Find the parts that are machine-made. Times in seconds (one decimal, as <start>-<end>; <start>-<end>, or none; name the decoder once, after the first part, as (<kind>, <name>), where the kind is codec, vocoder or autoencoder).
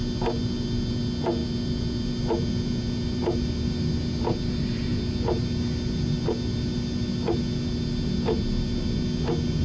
none